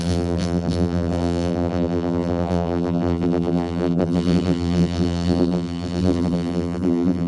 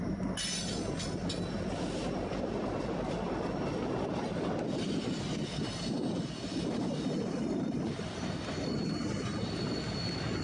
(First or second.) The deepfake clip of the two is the first